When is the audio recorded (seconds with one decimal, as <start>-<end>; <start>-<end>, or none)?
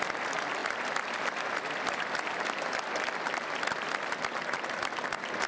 0.0-5.5